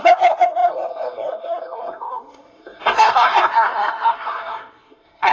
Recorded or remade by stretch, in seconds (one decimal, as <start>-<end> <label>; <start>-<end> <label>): 0.0-5.3 remade